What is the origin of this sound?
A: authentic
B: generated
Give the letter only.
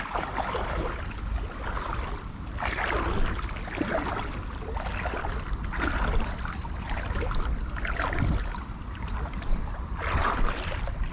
A